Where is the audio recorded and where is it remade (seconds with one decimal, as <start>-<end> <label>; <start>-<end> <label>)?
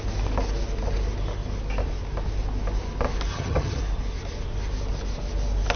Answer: 0.0-3.3 recorded; 3.3-3.8 remade; 3.8-5.8 recorded